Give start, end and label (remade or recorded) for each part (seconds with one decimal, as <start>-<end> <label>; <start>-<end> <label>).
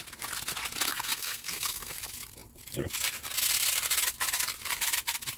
0.0-0.9 recorded; 0.9-2.0 remade; 2.0-5.4 recorded